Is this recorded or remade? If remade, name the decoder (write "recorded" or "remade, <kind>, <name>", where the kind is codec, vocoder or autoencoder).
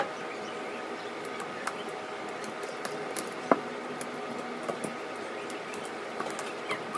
recorded